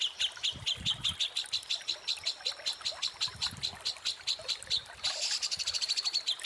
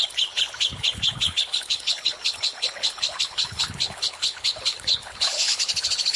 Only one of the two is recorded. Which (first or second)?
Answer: first